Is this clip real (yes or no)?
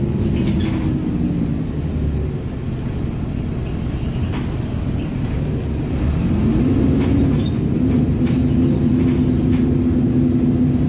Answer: yes